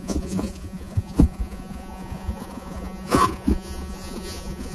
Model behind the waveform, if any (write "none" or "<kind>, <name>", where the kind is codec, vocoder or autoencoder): vocoder, Vocos